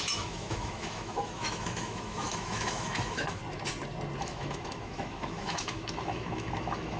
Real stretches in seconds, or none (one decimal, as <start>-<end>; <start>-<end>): 3.4-4.2